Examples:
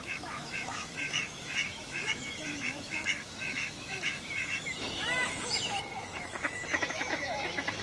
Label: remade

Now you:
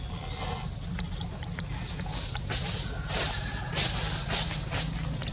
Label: recorded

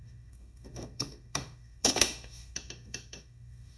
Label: remade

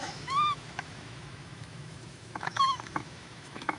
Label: remade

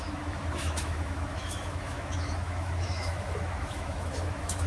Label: remade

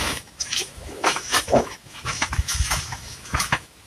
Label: remade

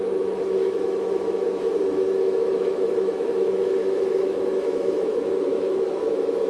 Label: remade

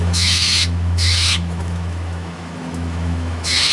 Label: remade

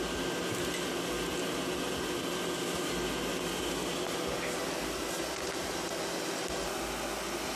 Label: recorded